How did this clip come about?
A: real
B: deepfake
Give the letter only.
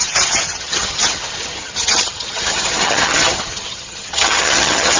B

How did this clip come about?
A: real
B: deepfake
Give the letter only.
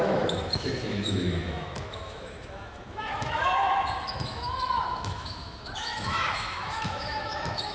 B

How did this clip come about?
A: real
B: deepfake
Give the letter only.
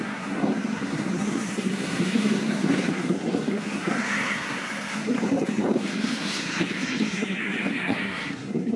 B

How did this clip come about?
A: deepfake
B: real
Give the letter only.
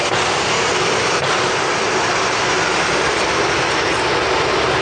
B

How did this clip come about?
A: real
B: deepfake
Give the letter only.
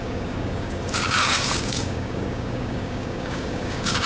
B